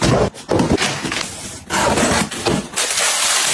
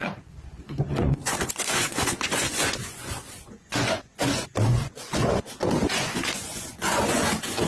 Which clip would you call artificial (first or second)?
second